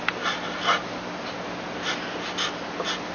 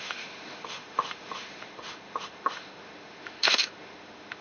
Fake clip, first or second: second